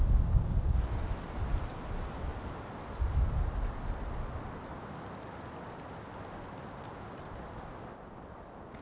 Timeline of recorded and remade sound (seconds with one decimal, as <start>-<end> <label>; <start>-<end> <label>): 0.0-8.8 recorded

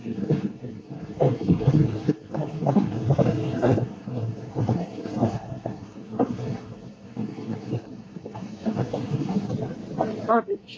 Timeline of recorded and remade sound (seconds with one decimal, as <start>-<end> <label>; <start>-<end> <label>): 0.0-9.5 remade; 9.5-10.3 recorded; 10.3-10.8 remade

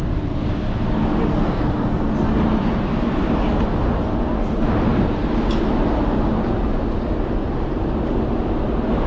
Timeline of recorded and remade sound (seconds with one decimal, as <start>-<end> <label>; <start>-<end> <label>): 0.0-1.3 recorded; 1.3-2.1 remade; 2.1-9.1 recorded